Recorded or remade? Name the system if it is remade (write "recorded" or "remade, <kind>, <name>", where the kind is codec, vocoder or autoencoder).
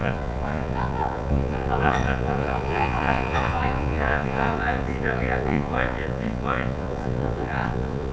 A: remade, vocoder, Vocos